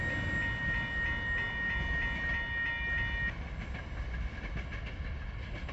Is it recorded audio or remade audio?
recorded